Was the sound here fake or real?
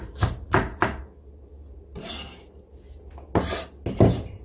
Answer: real